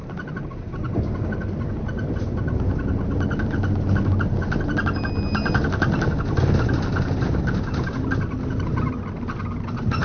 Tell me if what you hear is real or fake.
real